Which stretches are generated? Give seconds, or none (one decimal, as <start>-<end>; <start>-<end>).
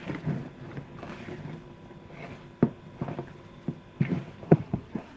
4.5-5.2